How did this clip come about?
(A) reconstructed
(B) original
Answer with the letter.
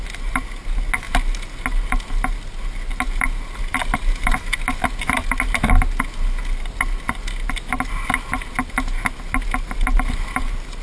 B